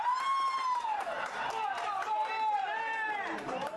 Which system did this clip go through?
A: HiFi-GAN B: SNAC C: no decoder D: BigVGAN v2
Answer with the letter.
D